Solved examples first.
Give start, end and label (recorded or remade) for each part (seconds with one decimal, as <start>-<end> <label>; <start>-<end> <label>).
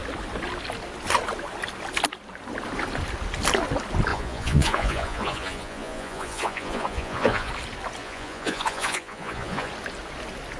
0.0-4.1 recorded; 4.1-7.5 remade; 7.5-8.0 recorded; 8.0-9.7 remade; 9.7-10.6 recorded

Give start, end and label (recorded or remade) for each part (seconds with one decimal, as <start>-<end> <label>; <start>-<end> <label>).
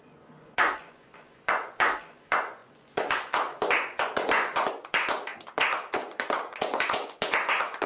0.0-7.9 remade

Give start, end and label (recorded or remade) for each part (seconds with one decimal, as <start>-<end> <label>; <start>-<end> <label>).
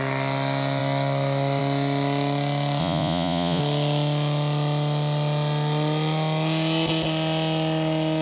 0.0-2.8 recorded; 2.8-3.6 remade; 3.6-8.2 recorded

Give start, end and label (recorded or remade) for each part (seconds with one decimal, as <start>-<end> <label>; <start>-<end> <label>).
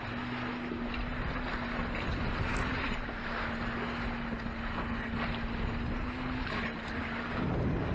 0.0-7.9 recorded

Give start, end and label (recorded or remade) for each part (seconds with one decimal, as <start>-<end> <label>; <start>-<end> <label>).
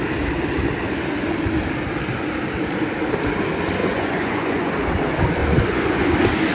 0.0-3.8 recorded; 3.8-4.7 remade; 4.7-5.4 recorded; 5.4-6.1 remade; 6.1-6.5 recorded